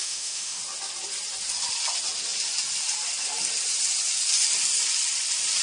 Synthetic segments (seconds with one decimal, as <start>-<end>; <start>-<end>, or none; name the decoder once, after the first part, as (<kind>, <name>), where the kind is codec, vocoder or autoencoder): 0.0-0.6 (autoencoder, DAC-VAE)